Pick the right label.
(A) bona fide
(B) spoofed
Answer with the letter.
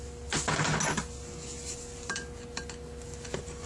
A